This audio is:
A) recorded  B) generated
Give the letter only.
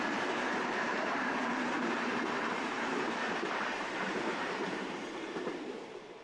B